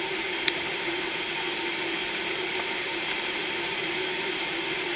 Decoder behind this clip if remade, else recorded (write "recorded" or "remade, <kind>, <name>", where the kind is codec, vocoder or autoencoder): remade, vocoder, BigVGAN v2